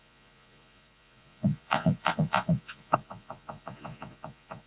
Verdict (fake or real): fake